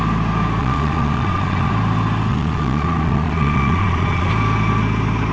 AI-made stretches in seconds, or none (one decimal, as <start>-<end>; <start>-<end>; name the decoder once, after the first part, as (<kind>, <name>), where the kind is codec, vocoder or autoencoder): 0.6-1.7 (vocoder, Vocos); 2.3-4.3

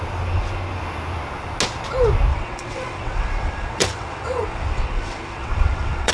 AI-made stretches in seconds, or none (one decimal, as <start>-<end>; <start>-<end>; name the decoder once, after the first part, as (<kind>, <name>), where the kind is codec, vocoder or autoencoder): 2.3-6.1 (vocoder, WaveNeXt)